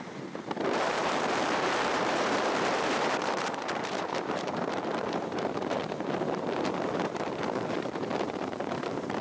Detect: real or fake fake